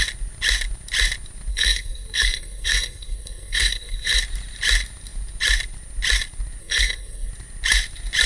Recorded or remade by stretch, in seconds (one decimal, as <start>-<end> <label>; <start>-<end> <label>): 0.0-1.5 recorded; 1.5-4.2 remade; 4.2-6.6 recorded; 6.6-7.3 remade; 7.3-8.3 recorded